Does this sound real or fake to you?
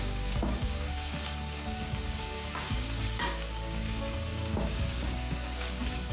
fake